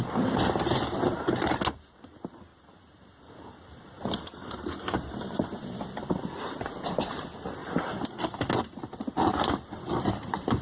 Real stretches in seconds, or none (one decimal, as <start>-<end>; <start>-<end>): 0.0-2.5; 6.9-7.6; 8.2-9.3; 10.1-10.6